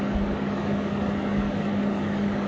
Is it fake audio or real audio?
fake